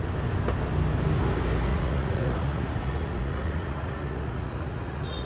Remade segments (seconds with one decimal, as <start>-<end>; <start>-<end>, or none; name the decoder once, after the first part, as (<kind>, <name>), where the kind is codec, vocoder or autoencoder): 1.7-5.3 (vocoder, Vocos)